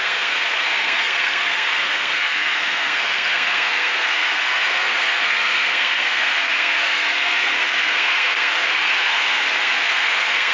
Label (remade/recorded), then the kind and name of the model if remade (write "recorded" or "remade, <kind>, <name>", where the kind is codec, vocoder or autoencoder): remade, codec, SNAC